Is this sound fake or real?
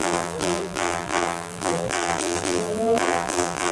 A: fake